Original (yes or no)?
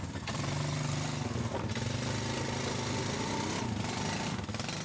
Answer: yes